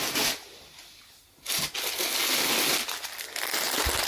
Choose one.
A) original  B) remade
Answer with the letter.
A